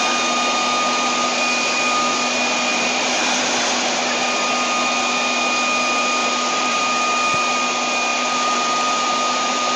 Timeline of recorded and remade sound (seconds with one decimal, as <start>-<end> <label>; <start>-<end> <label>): 0.0-2.7 recorded; 2.7-3.4 remade; 3.4-6.2 recorded; 6.2-6.8 remade; 6.8-8.1 recorded; 8.1-9.8 remade